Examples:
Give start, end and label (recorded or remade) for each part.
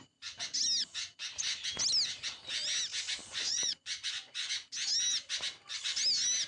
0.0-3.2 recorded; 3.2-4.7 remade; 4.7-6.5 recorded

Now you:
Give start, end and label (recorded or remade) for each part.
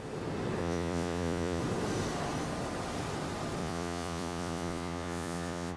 0.0-0.6 recorded; 0.6-1.6 remade; 1.6-3.6 recorded; 3.6-5.8 remade